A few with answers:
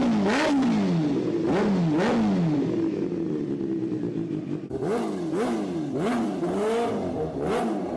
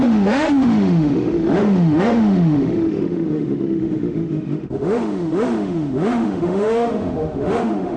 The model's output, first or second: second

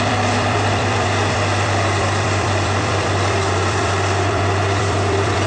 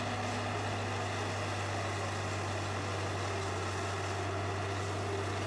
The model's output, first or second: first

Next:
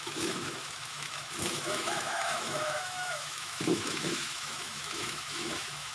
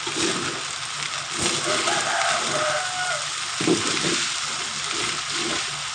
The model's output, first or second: first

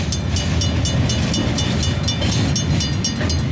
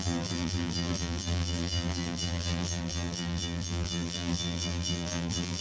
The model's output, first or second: second